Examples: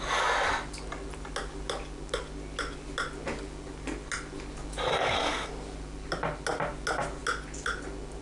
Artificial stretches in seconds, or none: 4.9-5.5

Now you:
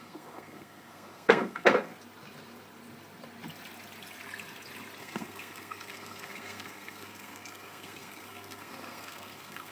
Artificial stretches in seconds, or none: 0.0-1.9; 5.0-9.7

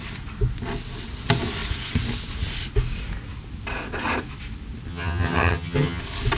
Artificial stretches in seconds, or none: 4.9-6.0

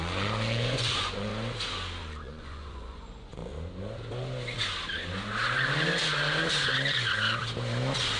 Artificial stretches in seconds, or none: 0.0-1.3; 2.0-3.4